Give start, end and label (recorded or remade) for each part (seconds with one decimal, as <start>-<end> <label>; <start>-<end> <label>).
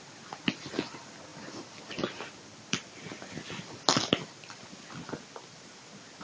0.0-6.2 recorded